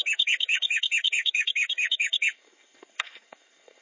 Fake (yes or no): yes